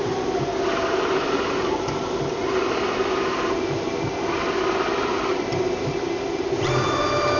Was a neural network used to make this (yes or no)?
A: no